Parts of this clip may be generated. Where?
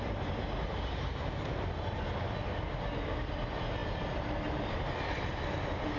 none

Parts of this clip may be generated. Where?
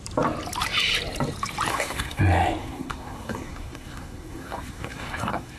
1.7-2.2 (codec, SNAC); 2.6-5.6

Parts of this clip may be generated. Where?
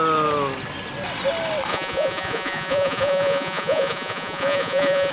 1.7-5.1 (vocoder, Vocos)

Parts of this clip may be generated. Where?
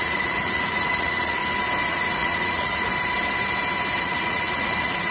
0.0-1.4 (vocoder, Vocos); 1.9-2.9; 4.0-5.1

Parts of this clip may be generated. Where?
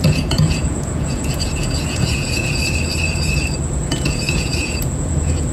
0.0-2.6 (vocoder, Vocos); 3.7-5.5